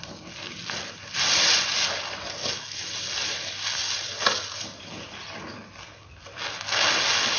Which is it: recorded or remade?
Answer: recorded